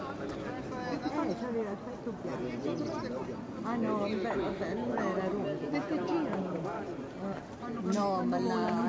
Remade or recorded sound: recorded